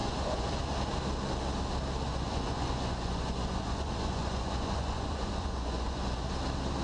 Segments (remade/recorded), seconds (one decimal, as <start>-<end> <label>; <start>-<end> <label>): 0.0-0.5 remade; 0.5-2.1 recorded; 2.1-6.2 remade; 6.2-6.8 recorded